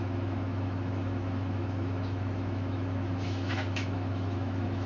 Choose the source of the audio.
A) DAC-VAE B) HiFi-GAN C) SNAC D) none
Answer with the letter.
A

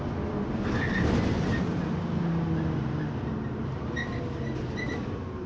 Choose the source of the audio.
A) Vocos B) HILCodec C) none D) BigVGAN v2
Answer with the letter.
C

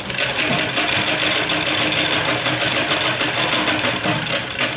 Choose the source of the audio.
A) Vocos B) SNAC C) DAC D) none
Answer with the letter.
D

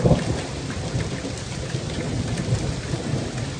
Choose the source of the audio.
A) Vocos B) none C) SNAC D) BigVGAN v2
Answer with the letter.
B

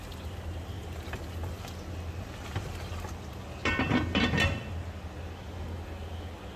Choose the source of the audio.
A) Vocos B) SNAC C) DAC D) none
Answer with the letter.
D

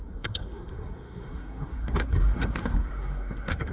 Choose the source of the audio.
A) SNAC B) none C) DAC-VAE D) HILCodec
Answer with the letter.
A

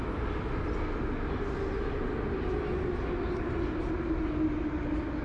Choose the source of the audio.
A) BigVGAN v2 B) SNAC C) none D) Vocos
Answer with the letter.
C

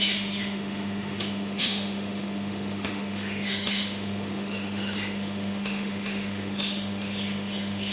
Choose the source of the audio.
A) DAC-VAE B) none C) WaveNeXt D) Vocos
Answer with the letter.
A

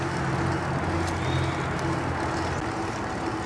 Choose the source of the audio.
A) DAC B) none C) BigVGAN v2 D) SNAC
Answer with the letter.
B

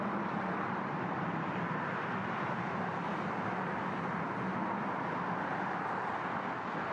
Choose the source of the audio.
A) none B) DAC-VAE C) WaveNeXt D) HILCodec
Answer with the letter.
A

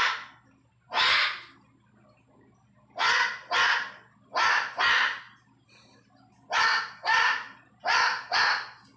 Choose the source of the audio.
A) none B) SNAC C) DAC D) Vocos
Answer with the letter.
A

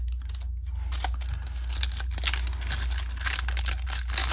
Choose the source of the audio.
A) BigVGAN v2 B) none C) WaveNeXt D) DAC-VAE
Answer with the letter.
B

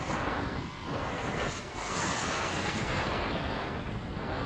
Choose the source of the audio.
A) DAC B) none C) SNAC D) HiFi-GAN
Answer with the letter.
C